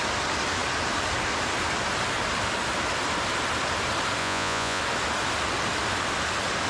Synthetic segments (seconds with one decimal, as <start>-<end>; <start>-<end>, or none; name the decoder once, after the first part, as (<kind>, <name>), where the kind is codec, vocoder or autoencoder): 4.2-4.8 (vocoder, Vocos)